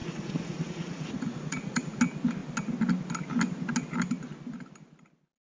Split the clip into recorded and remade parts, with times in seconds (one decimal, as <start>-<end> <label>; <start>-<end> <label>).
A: 0.0-2.0 remade; 2.0-5.6 recorded